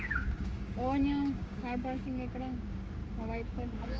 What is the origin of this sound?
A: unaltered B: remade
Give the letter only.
B